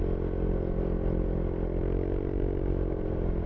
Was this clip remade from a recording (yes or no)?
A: no